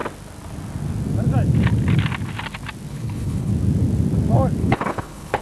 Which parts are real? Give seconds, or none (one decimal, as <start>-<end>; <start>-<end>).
0.0-2.9; 3.5-4.6